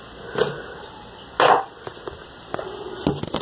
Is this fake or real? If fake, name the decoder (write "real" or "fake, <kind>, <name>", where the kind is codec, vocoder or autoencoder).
real